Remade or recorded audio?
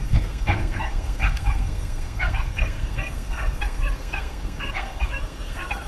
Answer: remade